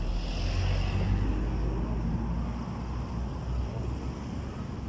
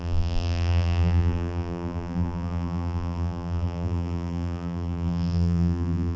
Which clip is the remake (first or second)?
second